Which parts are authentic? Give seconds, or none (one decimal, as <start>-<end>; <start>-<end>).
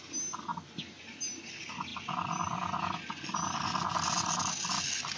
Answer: 0.0-5.2